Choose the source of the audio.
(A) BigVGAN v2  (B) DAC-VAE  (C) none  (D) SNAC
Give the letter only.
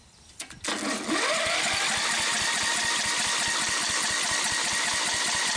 C